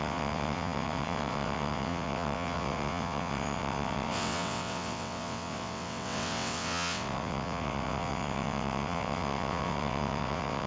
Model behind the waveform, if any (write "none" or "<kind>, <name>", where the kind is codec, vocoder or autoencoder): vocoder, WaveNeXt